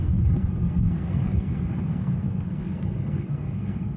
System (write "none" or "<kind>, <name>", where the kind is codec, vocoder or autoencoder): codec, SNAC